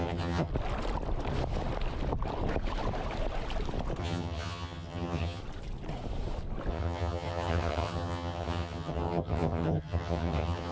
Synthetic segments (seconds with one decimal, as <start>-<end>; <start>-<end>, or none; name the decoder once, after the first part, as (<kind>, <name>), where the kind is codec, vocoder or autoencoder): 0.0-0.5 (vocoder, HiFi-GAN); 4.0-5.4; 6.7-10.7